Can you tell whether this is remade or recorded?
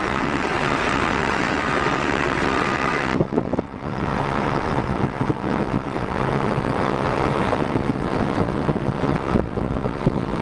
remade